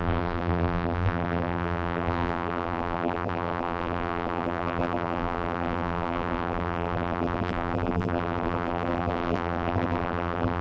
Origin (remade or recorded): remade